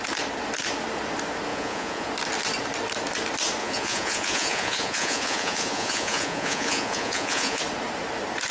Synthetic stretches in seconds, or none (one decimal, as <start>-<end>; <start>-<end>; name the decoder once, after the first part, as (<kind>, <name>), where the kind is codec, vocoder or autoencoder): 1.5-2.1 (vocoder, Vocos); 3.6-7.6